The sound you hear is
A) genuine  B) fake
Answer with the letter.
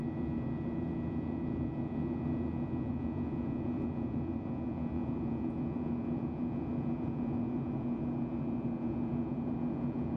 B